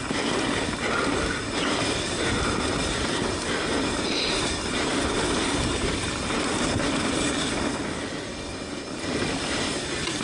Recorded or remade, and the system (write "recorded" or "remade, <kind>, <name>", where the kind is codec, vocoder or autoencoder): recorded